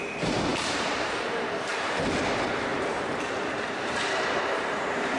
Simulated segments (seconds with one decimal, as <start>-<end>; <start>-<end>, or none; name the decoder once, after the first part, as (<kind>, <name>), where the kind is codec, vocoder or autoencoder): 0.5-1.7 (vocoder, BigVGAN v2); 2.7-5.2